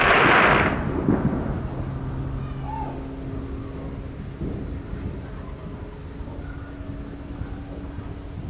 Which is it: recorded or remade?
recorded